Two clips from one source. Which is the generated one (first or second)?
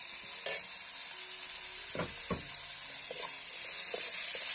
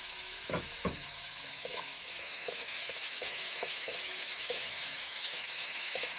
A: second